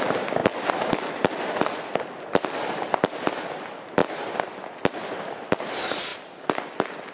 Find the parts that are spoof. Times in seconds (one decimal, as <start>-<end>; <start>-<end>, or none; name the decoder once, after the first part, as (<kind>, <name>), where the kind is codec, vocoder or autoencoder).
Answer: none